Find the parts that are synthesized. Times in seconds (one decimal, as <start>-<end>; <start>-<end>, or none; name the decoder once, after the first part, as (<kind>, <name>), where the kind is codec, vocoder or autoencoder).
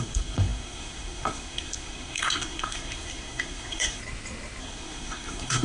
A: 0.0-4.0 (codec, SNAC); 4.6-5.6